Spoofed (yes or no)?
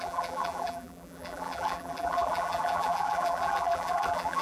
yes